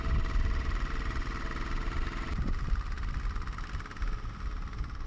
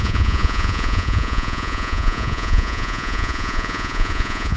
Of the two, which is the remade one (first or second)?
second